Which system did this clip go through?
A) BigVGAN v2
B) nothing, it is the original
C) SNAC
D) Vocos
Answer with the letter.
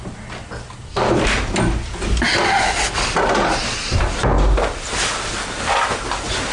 B